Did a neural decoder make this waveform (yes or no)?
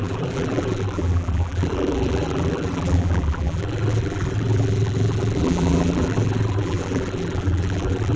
yes